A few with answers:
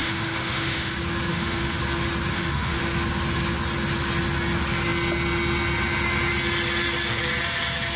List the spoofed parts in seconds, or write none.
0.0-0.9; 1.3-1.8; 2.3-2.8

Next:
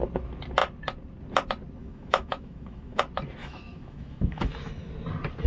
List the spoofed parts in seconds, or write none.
1.8-3.0; 3.4-4.9

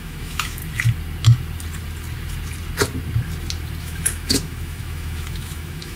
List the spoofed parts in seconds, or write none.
0.0-0.6; 3.8-6.0